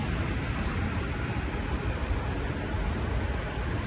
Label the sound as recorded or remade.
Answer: recorded